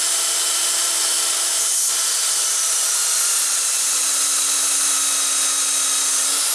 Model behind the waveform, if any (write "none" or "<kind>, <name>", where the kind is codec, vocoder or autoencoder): none